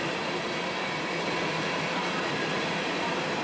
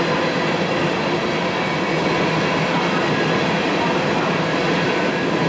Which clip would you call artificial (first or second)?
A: first